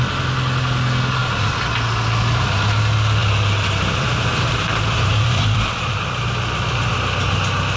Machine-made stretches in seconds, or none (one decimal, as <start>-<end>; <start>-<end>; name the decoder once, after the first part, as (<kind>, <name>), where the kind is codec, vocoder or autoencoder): 1.2-1.7 (vocoder, BigVGAN v2); 3.2-6.9